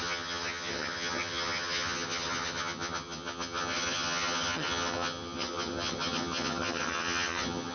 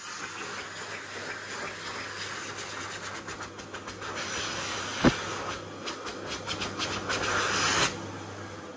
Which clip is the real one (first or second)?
second